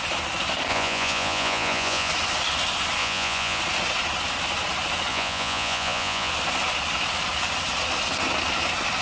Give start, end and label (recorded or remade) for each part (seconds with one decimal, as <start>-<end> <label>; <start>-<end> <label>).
0.0-0.7 recorded; 0.7-2.1 remade; 2.1-3.0 recorded; 3.0-3.6 remade; 3.6-5.1 recorded; 5.1-6.3 remade; 6.3-9.0 recorded

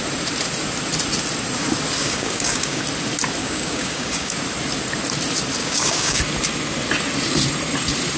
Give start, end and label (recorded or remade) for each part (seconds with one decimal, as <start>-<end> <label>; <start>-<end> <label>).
0.0-2.0 recorded; 2.0-2.8 remade; 2.8-3.4 recorded; 3.4-4.3 remade; 4.3-5.6 recorded; 5.6-6.2 remade; 6.2-8.2 recorded

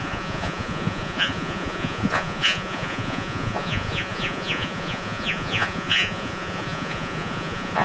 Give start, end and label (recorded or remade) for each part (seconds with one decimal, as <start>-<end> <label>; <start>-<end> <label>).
0.0-7.8 remade

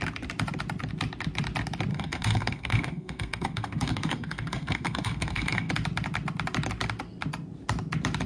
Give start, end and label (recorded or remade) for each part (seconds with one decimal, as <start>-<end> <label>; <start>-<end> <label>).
0.0-1.9 recorded; 1.9-5.7 remade; 5.7-8.3 recorded

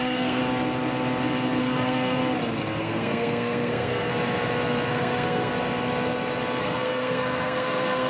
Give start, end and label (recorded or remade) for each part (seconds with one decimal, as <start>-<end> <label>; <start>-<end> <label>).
0.0-0.4 remade; 0.4-1.6 recorded; 1.6-2.2 remade; 2.2-2.8 recorded; 2.8-4.1 remade; 4.1-4.9 recorded; 4.9-5.5 remade; 5.5-6.6 recorded; 6.6-8.1 remade

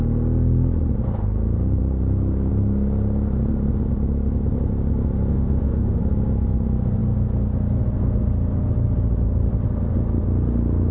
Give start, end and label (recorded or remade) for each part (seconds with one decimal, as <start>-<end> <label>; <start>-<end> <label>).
0.0-5.3 recorded; 5.3-6.0 remade; 6.0-10.9 recorded